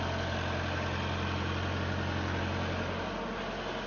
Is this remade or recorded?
recorded